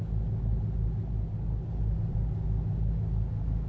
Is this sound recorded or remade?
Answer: recorded